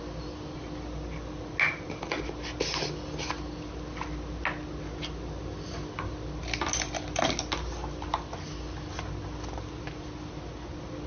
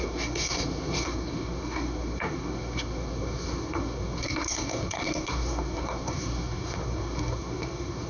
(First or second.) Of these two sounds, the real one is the first